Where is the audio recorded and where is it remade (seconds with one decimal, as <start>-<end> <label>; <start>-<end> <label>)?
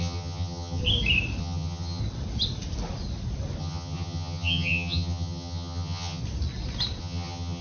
0.0-0.8 remade; 0.8-1.4 recorded; 1.4-2.0 remade; 2.0-3.6 recorded; 3.6-6.2 remade; 6.2-7.0 recorded; 7.0-7.6 remade